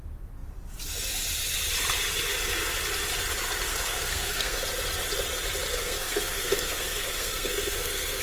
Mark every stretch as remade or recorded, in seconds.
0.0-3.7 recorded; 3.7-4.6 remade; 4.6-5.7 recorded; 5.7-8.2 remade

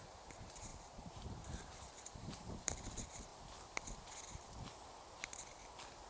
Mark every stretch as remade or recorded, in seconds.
0.0-3.3 remade; 3.3-6.1 recorded

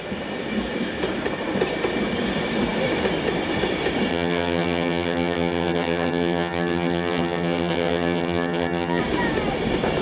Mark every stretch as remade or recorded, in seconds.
0.0-4.1 recorded; 4.1-9.0 remade; 9.0-10.0 recorded

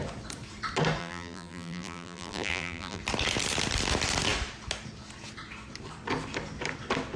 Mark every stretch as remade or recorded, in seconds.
0.0-1.0 recorded; 1.0-3.0 remade; 3.0-7.2 recorded

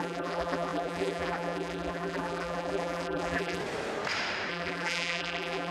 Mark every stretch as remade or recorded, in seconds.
0.0-3.6 remade; 3.6-4.5 recorded; 4.5-5.7 remade